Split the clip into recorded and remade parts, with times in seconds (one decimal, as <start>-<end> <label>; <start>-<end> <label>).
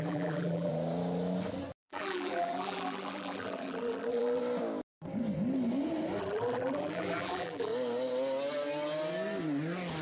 0.0-0.7 remade; 0.7-1.8 recorded; 1.8-4.4 remade; 4.4-6.2 recorded; 6.2-7.7 remade; 7.7-10.0 recorded